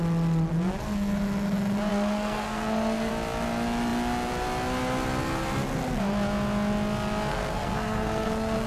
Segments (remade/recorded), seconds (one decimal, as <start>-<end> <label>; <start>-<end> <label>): 0.0-1.9 recorded; 1.9-3.1 remade; 3.1-7.3 recorded; 7.3-8.7 remade